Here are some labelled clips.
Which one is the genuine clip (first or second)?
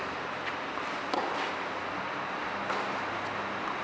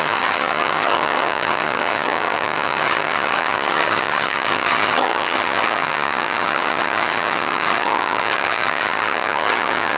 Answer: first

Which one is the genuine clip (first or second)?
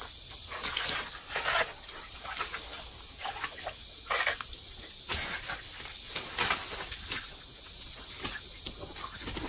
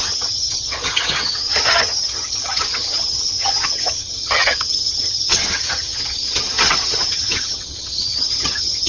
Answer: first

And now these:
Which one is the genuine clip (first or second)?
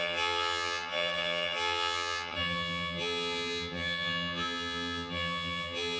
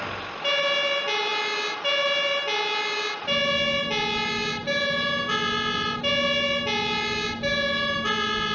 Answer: second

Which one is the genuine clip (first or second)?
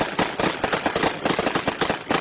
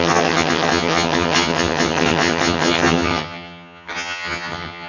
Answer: first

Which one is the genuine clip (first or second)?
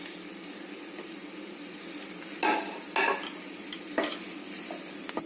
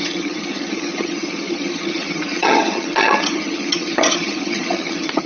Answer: first